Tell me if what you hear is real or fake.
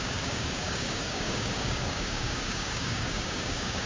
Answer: fake